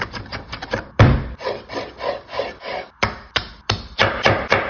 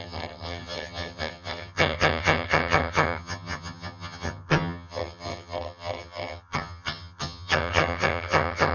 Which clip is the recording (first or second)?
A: first